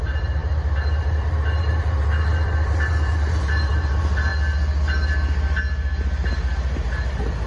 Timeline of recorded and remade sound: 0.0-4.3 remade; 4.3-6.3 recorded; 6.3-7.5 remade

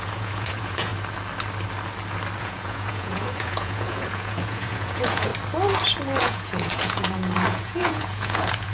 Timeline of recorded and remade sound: 0.0-0.9 remade; 0.9-2.4 recorded; 2.4-5.3 remade; 5.3-6.2 recorded; 6.2-8.7 remade